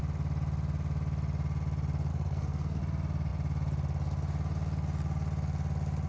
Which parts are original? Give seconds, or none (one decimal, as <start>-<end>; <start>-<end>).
0.0-2.1; 2.8-6.1